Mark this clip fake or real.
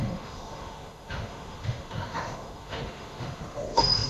fake